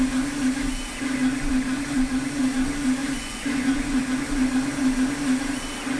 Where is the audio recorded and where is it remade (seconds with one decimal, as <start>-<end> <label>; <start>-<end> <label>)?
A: 0.0-3.0 recorded; 3.0-4.0 remade; 4.0-6.0 recorded

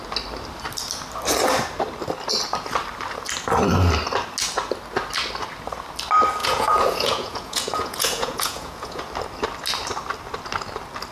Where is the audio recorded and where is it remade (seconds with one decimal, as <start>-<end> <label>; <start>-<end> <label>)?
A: 0.0-6.4 recorded; 6.4-9.0 remade; 9.0-11.1 recorded

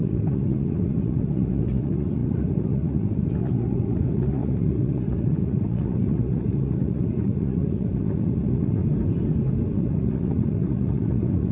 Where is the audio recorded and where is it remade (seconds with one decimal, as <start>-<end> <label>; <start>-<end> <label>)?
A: 0.0-8.8 remade; 8.8-9.7 recorded; 9.7-11.5 remade